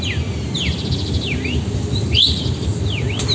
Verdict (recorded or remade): recorded